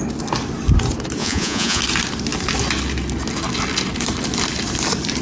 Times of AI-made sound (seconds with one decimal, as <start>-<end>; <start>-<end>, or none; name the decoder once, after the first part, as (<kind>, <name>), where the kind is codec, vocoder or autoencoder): 1.2-1.8 (vocoder, Vocos)